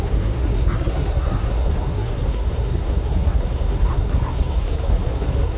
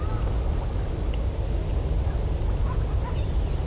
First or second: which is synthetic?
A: first